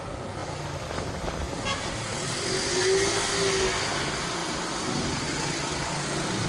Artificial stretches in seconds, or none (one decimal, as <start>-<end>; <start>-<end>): none